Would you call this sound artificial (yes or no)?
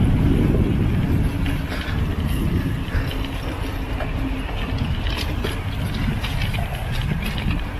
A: no